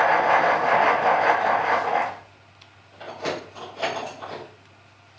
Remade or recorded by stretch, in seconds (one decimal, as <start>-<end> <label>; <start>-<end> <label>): 0.0-5.2 recorded